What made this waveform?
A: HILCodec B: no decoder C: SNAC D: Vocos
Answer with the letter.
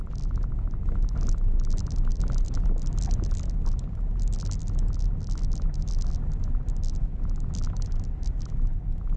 B